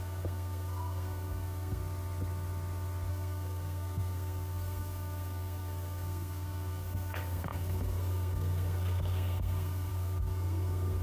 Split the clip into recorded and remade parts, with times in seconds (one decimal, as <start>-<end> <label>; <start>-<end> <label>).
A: 0.0-1.8 remade; 1.8-3.1 recorded; 3.1-11.0 remade